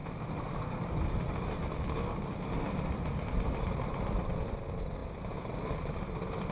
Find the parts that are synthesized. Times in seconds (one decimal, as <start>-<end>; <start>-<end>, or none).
2.2-6.5